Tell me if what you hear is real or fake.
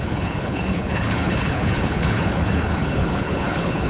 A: fake